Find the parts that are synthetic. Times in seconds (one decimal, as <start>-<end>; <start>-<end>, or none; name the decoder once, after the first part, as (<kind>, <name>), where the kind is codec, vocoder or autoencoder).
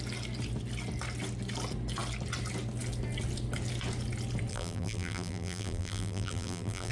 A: 4.5-6.9 (vocoder, BigVGAN v2)